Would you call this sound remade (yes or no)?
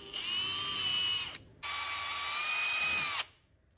no